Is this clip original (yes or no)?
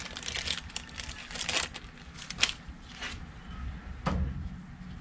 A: yes